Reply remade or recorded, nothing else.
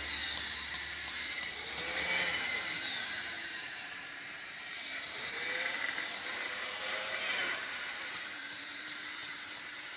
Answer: remade